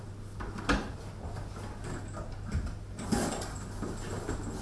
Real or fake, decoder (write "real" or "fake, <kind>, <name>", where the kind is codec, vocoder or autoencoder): real